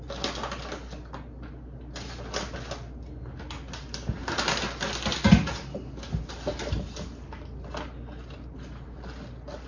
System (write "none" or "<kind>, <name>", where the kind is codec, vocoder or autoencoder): none